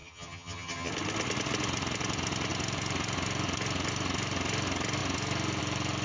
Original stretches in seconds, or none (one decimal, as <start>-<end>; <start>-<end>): 0.9-6.0